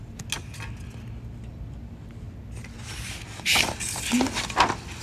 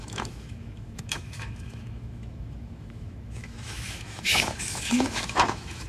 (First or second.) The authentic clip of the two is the first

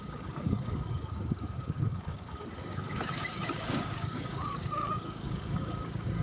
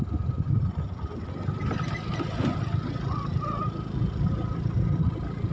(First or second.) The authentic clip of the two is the second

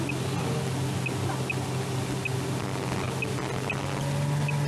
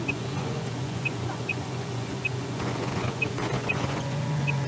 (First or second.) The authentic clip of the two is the first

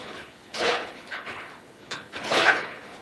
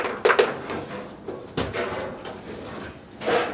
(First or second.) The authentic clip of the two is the second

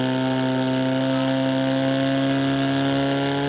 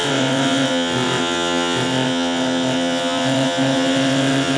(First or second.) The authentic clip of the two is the first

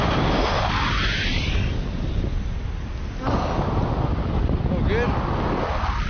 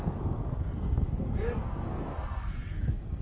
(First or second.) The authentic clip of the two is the first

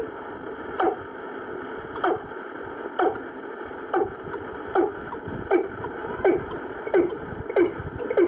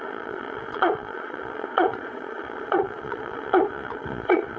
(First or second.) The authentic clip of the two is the first